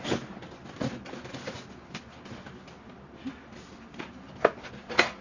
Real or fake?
real